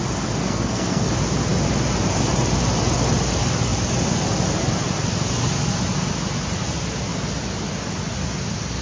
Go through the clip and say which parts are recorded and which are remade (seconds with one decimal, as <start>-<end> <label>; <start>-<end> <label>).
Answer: 0.0-0.4 recorded; 0.4-1.1 remade; 1.1-8.8 recorded